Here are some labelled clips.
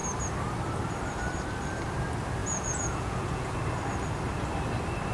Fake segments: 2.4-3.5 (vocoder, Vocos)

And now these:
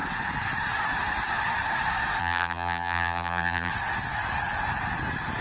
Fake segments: 2.2-3.7 (vocoder, BigVGAN v2)